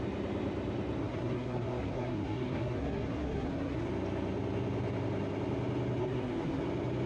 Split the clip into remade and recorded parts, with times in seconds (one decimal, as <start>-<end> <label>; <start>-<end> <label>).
0.0-1.0 recorded; 1.0-3.9 remade; 3.9-6.0 recorded; 6.0-6.6 remade; 6.6-7.1 recorded